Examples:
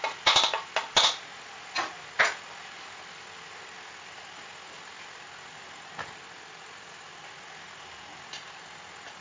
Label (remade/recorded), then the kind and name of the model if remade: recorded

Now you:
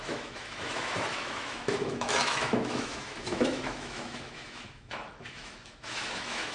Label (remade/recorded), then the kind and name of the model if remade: remade, autoencoder, DAC-VAE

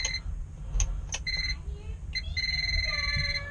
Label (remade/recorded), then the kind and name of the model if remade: recorded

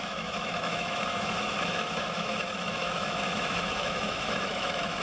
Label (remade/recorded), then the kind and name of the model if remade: remade, autoencoder, DAC-VAE